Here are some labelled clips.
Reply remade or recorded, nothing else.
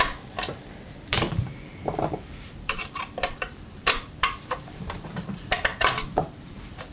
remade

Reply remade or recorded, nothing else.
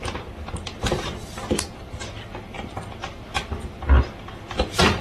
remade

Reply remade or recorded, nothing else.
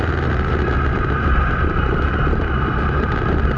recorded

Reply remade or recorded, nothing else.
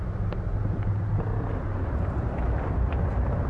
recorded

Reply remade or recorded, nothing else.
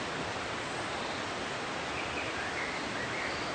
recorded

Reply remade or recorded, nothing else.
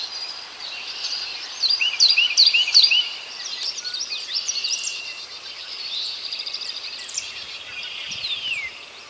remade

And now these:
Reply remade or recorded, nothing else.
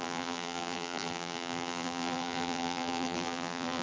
remade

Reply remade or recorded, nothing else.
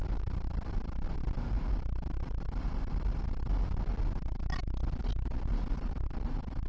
recorded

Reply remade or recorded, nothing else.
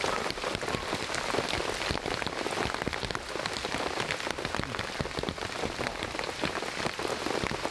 recorded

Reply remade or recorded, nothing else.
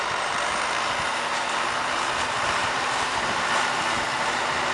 remade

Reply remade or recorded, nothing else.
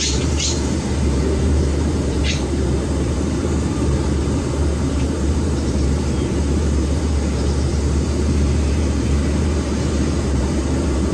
remade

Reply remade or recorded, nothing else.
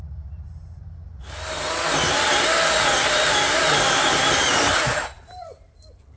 recorded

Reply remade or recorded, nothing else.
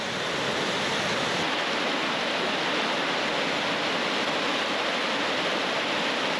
recorded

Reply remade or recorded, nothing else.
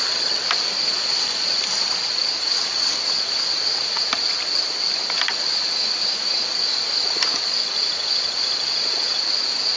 recorded